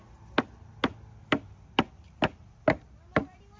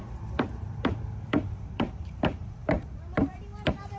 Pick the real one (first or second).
first